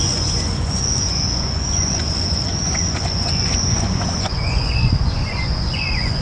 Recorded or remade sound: remade